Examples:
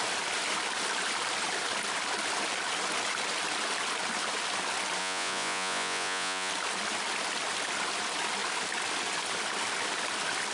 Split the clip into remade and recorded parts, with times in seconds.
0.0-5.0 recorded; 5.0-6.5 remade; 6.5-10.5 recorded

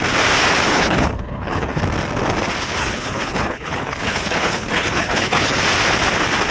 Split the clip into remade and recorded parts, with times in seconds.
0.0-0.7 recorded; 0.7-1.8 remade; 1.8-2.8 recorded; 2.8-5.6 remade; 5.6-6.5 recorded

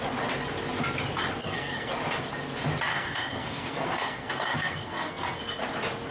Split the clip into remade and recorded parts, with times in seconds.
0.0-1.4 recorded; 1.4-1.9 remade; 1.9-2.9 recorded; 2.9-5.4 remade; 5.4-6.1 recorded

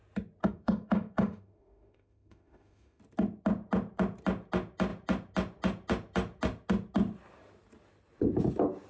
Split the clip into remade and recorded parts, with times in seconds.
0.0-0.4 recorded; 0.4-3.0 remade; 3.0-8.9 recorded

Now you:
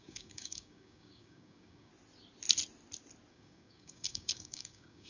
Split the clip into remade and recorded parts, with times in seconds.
0.0-1.9 remade; 1.9-3.3 recorded; 3.3-5.1 remade

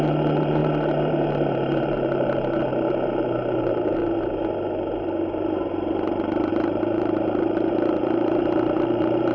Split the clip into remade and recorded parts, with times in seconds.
0.0-2.7 remade; 2.7-3.6 recorded; 3.6-4.0 remade; 4.0-6.5 recorded; 6.5-9.3 remade